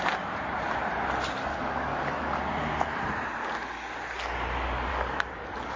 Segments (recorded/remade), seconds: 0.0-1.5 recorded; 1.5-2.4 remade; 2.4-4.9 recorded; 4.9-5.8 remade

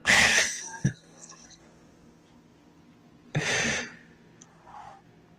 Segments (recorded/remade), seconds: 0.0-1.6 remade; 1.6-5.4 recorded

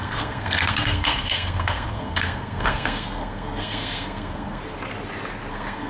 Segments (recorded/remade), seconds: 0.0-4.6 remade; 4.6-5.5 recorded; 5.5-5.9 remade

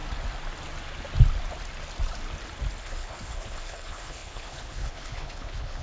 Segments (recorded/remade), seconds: 0.0-2.8 recorded; 2.8-5.8 remade